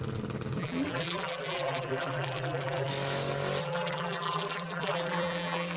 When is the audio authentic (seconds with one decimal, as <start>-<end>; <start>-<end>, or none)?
0.0-0.6; 2.9-3.6